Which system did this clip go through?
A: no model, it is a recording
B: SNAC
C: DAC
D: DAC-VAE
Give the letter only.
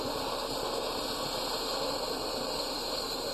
A